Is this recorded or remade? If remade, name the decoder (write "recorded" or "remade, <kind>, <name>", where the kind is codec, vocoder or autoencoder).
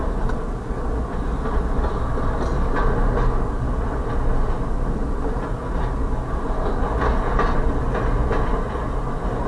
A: recorded